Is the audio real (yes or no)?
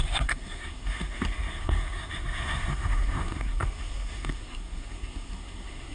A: no